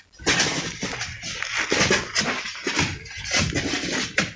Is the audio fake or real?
real